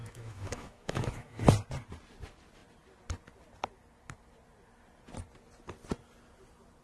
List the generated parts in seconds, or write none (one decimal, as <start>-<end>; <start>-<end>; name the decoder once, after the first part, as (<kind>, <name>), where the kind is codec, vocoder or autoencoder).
0.0-1.4 (autoencoder, DAC-VAE)